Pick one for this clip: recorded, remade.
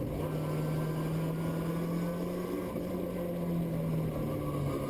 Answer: recorded